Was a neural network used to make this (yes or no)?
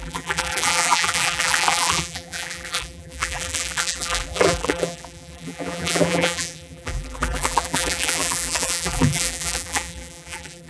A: yes